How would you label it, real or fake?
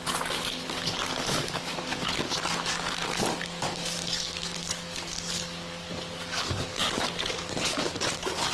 fake